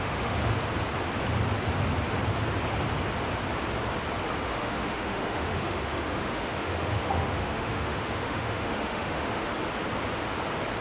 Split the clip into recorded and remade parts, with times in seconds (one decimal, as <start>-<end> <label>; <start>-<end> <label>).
0.0-0.4 remade; 0.4-4.4 recorded; 4.4-9.5 remade; 9.5-10.8 recorded